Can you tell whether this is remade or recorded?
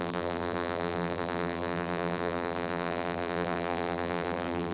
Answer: remade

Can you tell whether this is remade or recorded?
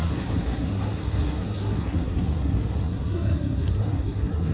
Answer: remade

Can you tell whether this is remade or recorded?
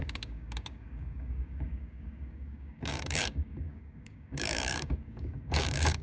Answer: remade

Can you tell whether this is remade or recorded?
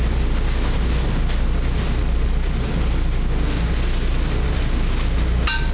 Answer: recorded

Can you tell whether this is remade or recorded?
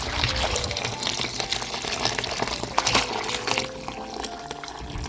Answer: recorded